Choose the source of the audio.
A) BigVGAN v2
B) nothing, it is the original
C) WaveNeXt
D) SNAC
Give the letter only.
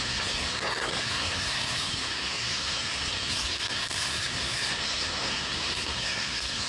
D